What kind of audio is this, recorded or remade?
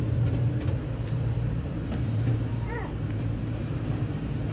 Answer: remade